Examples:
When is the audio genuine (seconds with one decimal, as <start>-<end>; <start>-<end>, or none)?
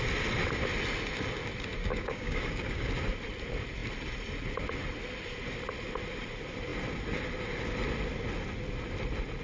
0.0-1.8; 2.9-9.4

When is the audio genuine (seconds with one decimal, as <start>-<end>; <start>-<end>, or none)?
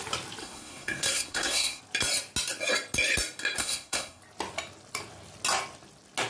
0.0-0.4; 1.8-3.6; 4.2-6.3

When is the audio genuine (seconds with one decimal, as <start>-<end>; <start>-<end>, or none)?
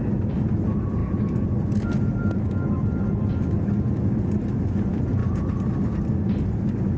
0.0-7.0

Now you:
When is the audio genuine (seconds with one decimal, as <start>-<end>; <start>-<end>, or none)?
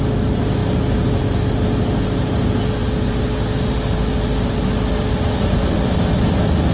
0.0-6.7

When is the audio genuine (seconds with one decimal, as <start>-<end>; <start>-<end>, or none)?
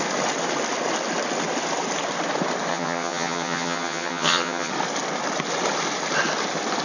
0.0-2.7; 4.7-6.8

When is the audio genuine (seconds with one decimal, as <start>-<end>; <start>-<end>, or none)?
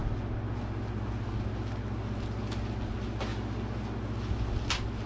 0.0-5.1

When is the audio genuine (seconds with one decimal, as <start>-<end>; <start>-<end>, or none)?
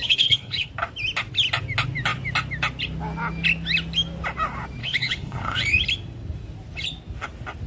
0.7-4.8; 5.6-7.7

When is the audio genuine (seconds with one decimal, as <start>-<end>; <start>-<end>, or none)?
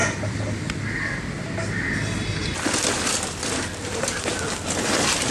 1.8-2.4